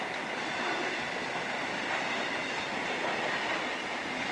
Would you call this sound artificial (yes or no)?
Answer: no